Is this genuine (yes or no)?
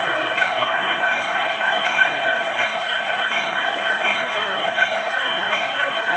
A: no